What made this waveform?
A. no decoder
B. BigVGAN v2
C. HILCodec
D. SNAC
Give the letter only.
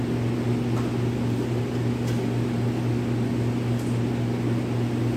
A